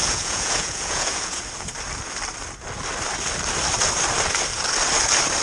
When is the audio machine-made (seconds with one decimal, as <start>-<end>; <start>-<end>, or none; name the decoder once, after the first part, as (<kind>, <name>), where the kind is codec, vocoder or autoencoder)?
0.0-1.4 (vocoder, Vocos)

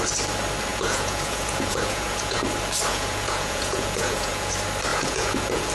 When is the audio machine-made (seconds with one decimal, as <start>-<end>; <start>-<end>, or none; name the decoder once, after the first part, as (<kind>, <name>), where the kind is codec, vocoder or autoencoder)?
0.7-2.4 (vocoder, Vocos); 2.9-4.5; 4.9-5.7

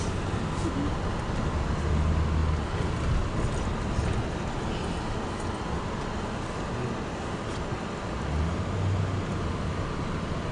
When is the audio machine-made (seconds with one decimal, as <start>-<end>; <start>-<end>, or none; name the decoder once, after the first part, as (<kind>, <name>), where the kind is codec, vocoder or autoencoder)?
none

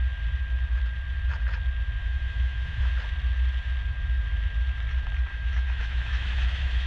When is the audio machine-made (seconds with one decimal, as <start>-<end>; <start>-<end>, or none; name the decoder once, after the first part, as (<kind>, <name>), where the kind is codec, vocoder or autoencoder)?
2.0-2.9 (autoencoder, DAC-VAE); 5.3-6.9

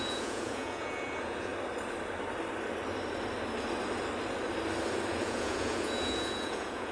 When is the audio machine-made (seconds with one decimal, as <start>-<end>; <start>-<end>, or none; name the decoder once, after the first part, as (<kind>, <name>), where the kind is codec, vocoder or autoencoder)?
0.0-1.5 (vocoder, Vocos); 5.1-6.9

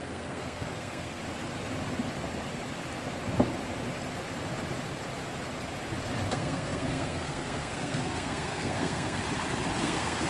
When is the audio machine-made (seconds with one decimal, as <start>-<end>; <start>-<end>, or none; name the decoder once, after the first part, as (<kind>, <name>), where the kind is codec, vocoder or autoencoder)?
0.0-1.2 (codec, SNAC); 6.3-9.2; 9.8-10.3

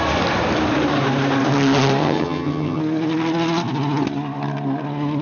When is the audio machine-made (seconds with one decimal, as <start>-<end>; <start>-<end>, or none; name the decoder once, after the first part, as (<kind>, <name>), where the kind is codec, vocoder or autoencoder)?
2.0-2.8 (vocoder, HiFi-GAN)